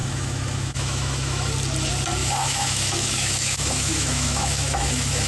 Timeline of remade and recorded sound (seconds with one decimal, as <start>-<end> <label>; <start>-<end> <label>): 0.0-1.5 remade; 1.5-2.2 recorded; 2.2-5.3 remade